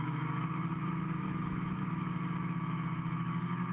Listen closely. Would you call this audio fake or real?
fake